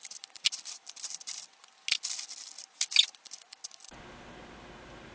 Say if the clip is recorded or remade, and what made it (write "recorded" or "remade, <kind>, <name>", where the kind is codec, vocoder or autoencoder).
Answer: recorded